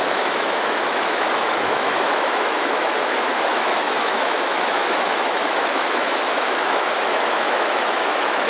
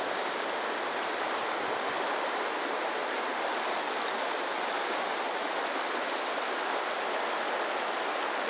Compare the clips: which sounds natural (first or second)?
second